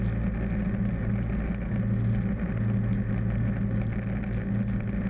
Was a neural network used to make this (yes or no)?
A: no